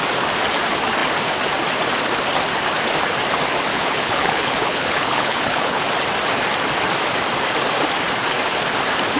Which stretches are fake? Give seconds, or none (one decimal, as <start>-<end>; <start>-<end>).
3.7-5.8